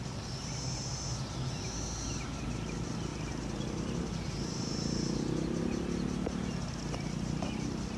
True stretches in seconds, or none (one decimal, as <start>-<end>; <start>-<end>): 0.0-8.0